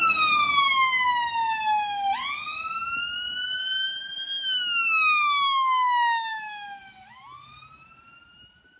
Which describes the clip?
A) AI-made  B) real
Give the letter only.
B